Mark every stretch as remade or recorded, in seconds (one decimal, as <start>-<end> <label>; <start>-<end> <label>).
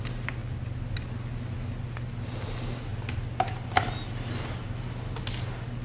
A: 0.0-5.8 recorded